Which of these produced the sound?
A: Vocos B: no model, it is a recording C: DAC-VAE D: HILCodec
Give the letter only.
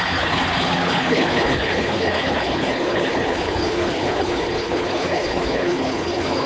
D